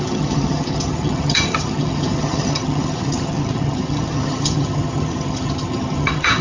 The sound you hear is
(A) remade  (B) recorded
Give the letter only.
A